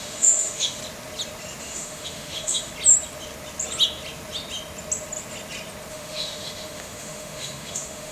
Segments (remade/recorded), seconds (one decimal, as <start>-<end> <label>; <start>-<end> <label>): 0.0-0.8 remade; 0.8-1.6 recorded; 1.6-2.7 remade; 2.7-5.9 recorded; 5.9-8.1 remade